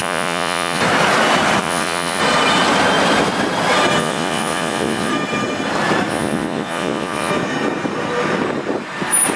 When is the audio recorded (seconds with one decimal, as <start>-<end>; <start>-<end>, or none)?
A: 0.8-1.6; 2.2-4.0; 5.1-6.1; 7.3-9.4